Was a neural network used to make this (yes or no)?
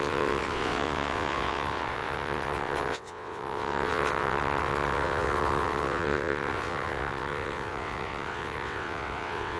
yes